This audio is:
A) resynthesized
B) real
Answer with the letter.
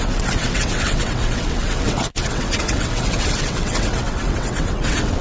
A